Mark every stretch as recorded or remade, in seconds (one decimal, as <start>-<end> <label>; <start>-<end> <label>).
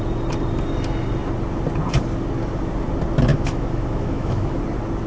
0.0-3.3 recorded; 3.3-4.6 remade; 4.6-5.1 recorded